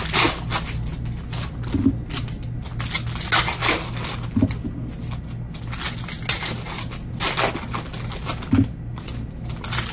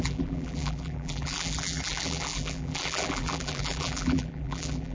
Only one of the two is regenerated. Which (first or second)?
second